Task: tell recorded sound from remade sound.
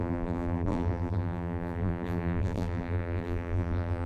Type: remade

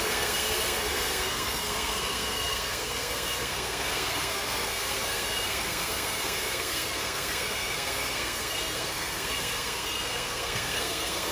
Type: remade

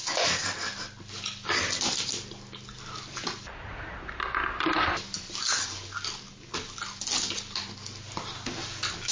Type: recorded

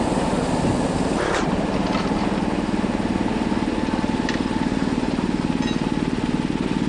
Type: recorded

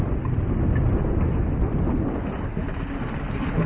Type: recorded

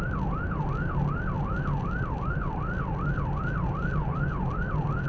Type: recorded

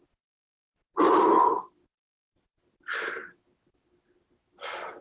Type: recorded